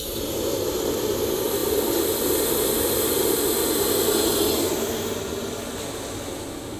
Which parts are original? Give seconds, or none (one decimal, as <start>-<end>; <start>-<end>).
0.0-6.8